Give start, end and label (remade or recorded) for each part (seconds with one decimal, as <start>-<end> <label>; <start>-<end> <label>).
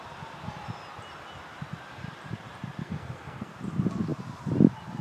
0.0-2.8 recorded; 2.8-3.5 remade; 3.5-5.0 recorded